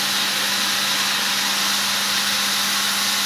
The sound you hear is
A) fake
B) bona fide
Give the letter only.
B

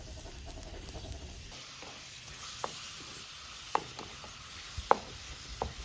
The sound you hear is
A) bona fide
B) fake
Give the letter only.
A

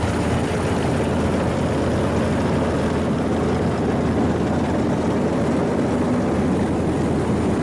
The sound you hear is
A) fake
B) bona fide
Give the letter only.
B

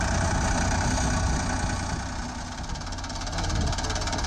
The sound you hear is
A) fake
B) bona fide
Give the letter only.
B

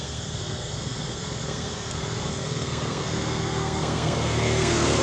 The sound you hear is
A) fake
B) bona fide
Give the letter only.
A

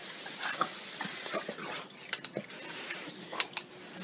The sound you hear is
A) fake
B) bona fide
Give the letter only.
B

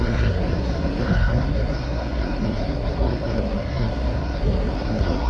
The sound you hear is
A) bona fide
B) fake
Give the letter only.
B